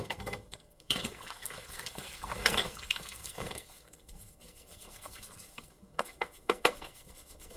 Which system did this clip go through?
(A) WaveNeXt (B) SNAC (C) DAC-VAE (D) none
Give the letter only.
B